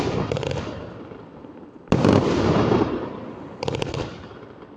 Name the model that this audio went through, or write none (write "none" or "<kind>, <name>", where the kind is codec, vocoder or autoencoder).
vocoder, BigVGAN v2